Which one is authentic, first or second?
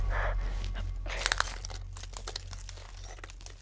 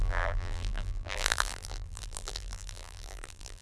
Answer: first